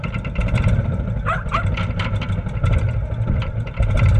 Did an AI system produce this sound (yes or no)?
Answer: yes